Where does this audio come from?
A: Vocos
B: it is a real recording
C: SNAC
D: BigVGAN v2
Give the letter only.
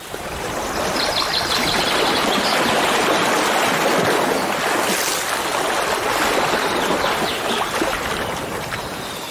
B